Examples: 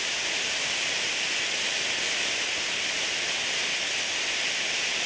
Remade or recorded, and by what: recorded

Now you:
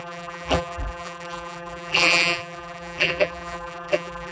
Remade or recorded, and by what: remade, vocoder, BigVGAN v2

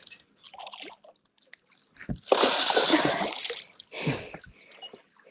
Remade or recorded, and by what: recorded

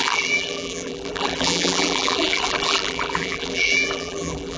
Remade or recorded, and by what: remade, vocoder, BigVGAN v2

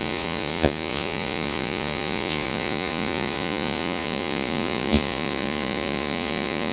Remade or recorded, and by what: remade, vocoder, Vocos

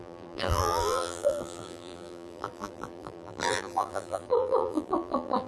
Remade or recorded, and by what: remade, vocoder, BigVGAN v2